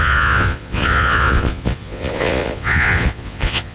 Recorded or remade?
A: remade